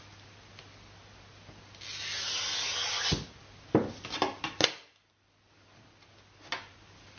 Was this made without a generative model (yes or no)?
yes